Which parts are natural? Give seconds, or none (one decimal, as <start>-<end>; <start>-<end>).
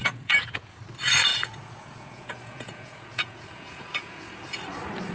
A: 0.8-1.3; 4.4-5.1